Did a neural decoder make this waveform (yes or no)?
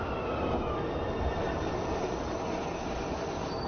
no